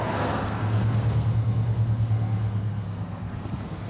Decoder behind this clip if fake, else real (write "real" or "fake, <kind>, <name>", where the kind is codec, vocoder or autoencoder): fake, codec, SNAC